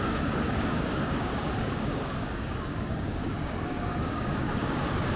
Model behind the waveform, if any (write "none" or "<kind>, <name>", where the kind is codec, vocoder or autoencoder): codec, DAC